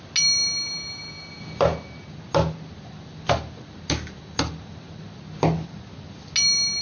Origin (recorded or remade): recorded